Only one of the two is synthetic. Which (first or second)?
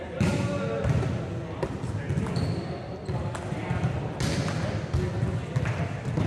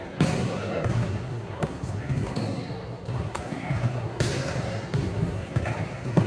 second